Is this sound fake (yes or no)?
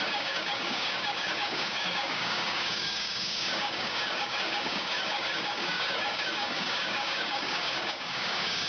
yes